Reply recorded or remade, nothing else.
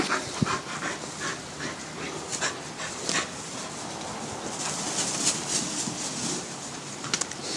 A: recorded